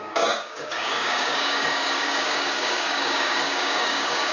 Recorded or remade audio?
remade